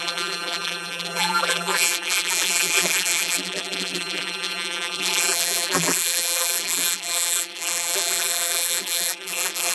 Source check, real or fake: fake